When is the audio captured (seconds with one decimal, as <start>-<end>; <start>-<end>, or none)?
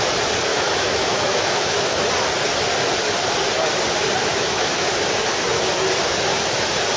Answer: 0.0-0.5; 2.0-4.2; 4.9-7.0